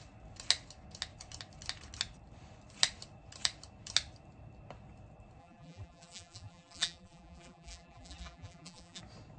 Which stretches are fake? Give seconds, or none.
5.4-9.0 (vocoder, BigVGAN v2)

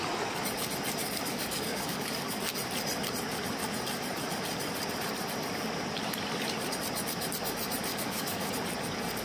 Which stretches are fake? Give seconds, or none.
1.0-2.4 (codec, DAC); 7.9-8.5

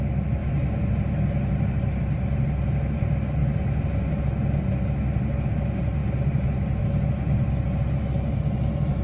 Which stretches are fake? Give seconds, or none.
none

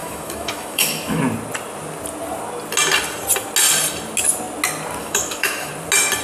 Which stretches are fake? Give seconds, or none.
0.0-1.2 (autoencoder, DAC-VAE); 5.0-5.7

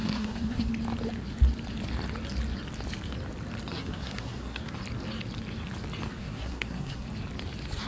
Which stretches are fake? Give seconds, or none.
0.0-0.7 (codec, SNAC); 3.7-4.6; 6.1-7.1

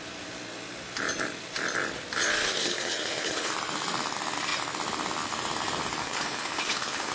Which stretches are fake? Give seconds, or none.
2.6-3.5 (codec, HILCodec); 6.0-7.1